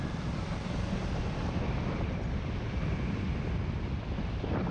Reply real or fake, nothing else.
real